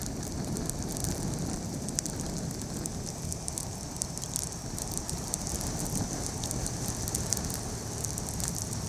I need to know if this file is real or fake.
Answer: real